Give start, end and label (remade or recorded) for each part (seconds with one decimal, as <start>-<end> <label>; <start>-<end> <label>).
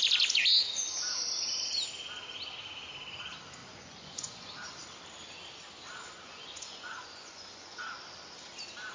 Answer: 0.0-3.6 recorded; 3.6-4.5 remade; 4.5-6.2 recorded; 6.2-7.8 remade; 7.8-8.9 recorded